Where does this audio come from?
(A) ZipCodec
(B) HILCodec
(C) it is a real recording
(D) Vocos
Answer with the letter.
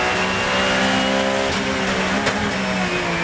C